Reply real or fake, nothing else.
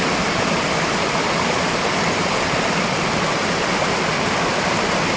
real